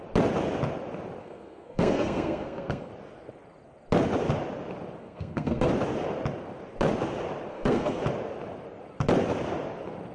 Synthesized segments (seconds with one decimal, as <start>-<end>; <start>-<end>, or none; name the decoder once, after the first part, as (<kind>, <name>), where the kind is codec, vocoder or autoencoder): 1.2-2.9 (codec, SNAC); 5.0-5.7; 7.5-8.0